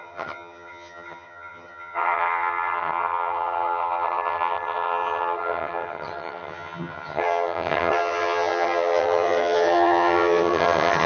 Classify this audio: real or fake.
fake